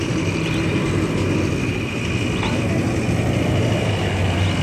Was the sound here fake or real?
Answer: real